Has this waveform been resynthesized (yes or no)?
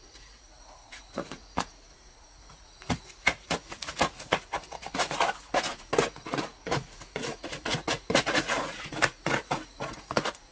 yes